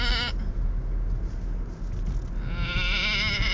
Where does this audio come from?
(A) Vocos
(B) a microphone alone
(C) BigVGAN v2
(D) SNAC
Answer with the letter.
B